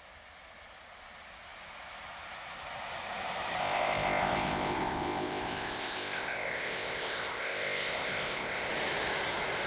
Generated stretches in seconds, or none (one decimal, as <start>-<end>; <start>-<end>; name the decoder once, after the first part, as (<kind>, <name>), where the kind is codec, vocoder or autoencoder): 3.6-8.7 (codec, ZipCodec)